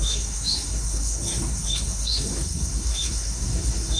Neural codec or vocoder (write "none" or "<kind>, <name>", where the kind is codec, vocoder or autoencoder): codec, SNAC